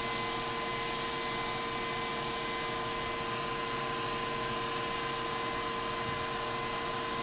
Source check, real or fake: real